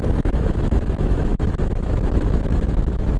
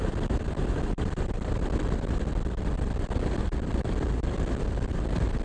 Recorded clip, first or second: second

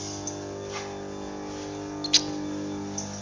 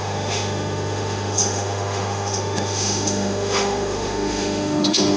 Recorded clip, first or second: first